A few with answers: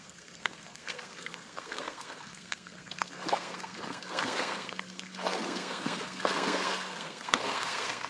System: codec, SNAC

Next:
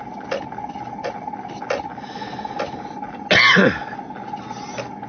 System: none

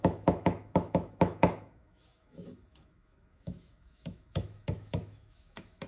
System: autoencoder, DAC-VAE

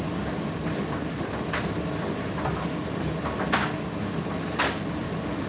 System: none